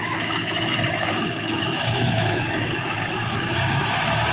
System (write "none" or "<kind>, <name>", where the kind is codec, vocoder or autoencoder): autoencoder, DAC-VAE